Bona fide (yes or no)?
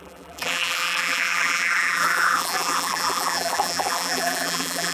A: no